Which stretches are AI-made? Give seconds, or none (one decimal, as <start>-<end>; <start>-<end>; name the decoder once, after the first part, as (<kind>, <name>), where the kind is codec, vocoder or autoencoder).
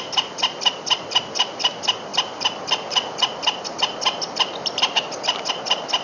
none